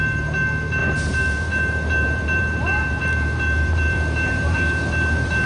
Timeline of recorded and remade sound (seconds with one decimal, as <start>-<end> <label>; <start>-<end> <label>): 0.0-5.5 remade